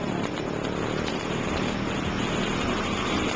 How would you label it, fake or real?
real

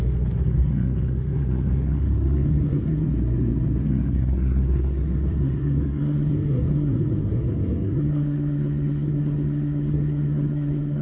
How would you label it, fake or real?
fake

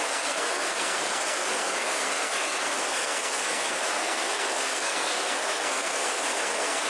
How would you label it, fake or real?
fake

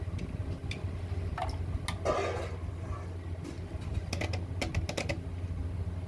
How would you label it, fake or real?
real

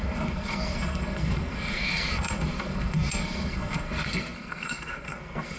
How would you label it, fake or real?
fake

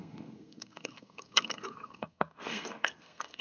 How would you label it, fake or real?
fake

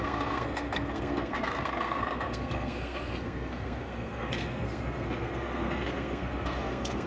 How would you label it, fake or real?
fake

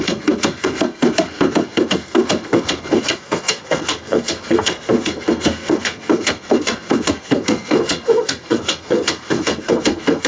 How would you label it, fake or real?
fake